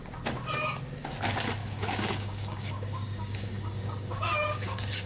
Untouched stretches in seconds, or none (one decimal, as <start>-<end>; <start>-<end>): 0.0-1.6